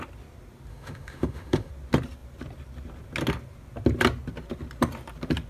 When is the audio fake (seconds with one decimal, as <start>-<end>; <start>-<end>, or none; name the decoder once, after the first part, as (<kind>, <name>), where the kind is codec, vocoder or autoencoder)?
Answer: 0.7-1.7 (autoencoder, DAC-VAE)